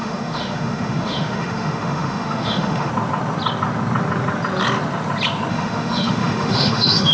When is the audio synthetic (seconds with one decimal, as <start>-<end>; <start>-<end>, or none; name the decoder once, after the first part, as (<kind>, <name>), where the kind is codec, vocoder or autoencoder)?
0.0-2.9 (autoencoder, DAC-VAE); 5.5-7.1